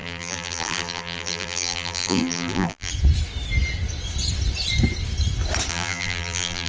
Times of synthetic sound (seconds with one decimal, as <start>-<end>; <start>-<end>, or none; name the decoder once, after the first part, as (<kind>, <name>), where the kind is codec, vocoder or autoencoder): 0.0-2.9 (vocoder, BigVGAN v2); 5.7-6.7